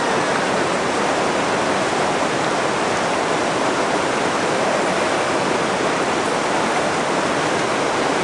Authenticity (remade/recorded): recorded